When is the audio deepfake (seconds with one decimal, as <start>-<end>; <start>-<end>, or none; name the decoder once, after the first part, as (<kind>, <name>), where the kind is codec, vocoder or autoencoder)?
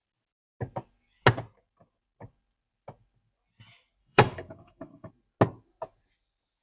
4.0-5.1 (codec, DAC)